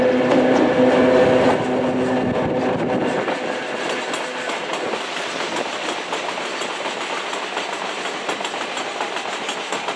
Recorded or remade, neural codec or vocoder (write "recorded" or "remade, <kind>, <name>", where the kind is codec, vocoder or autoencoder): recorded